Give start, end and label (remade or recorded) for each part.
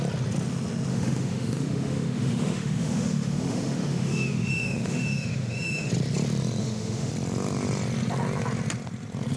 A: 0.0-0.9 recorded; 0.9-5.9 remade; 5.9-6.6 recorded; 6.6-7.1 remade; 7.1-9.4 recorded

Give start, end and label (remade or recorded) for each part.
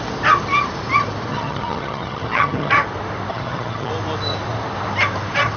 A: 0.0-1.3 recorded; 1.3-2.7 remade; 2.7-3.3 recorded; 3.3-3.9 remade; 3.9-5.6 recorded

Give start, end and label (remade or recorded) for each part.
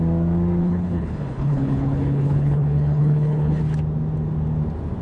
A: 0.0-0.6 recorded; 0.6-3.6 remade; 3.6-5.0 recorded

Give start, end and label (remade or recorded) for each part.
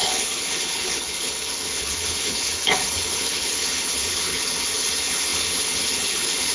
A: 0.0-6.5 remade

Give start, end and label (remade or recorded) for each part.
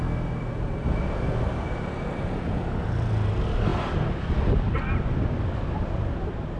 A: 0.0-6.6 recorded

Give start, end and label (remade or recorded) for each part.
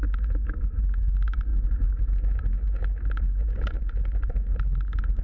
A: 0.0-5.2 remade